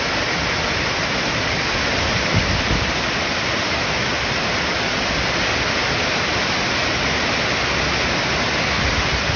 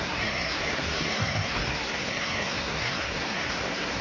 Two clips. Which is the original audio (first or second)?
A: first